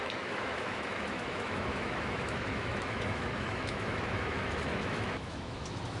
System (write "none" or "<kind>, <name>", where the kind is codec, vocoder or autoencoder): autoencoder, DAC-VAE